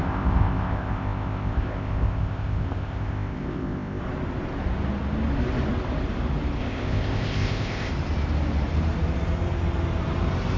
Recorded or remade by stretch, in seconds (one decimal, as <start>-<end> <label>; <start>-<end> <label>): 0.0-4.0 remade; 4.0-6.6 recorded; 6.6-7.9 remade; 7.9-10.6 recorded